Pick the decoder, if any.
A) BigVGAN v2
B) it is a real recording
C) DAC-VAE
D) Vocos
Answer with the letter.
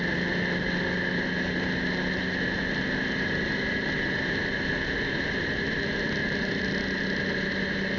B